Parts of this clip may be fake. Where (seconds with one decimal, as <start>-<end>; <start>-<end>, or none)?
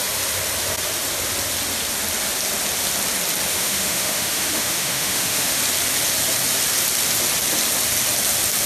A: 3.5-5.6